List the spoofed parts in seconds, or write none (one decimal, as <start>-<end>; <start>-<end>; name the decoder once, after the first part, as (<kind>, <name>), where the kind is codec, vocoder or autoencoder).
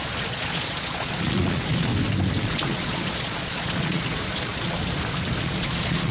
0.0-1.9 (vocoder, Vocos); 2.4-4.8; 5.4-6.1